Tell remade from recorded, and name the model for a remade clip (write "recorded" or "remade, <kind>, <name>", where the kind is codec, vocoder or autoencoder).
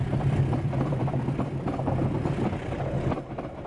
remade, vocoder, BigVGAN v2